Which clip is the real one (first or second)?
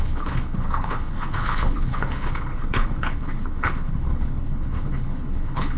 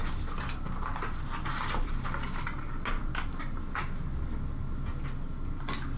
second